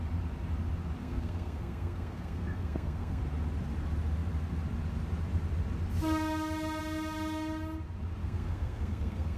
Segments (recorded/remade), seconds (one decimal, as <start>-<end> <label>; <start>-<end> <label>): 0.0-1.0 recorded; 1.0-3.2 remade; 3.2-8.2 recorded; 8.2-9.4 remade